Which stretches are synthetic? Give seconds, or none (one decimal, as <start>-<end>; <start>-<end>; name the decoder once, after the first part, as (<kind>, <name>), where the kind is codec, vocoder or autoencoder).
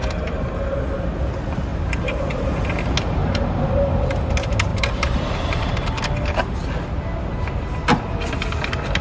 1.7-2.2 (vocoder, BigVGAN v2); 3.2-4.3; 4.7-5.7